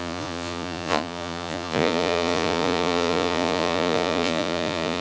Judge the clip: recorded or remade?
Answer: remade